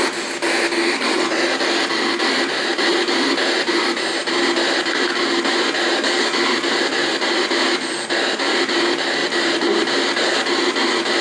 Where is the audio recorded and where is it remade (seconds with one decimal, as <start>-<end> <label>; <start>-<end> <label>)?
0.0-11.2 recorded